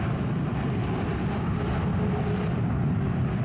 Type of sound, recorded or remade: recorded